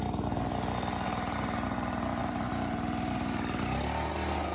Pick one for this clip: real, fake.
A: real